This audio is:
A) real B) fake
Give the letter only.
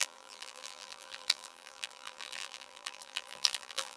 B